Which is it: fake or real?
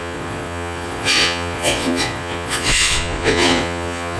fake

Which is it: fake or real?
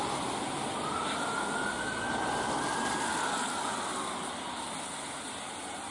real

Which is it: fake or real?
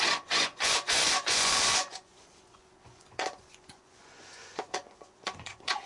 fake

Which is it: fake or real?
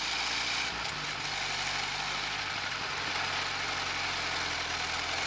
real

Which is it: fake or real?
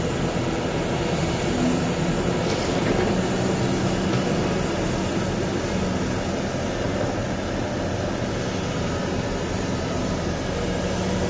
real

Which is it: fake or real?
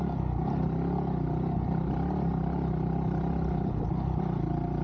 real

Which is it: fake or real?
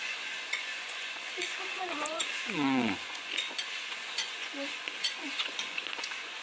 fake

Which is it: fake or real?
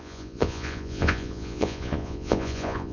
fake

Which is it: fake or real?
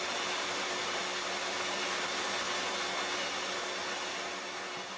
real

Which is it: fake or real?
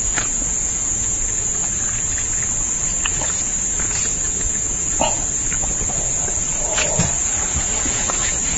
fake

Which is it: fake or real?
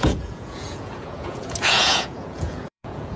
fake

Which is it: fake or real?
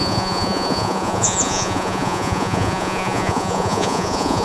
fake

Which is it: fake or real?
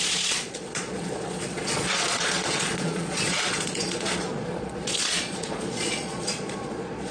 fake